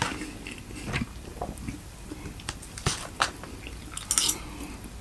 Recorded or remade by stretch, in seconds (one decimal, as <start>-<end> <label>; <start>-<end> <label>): 0.0-5.0 recorded